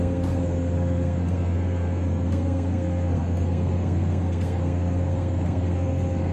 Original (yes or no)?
no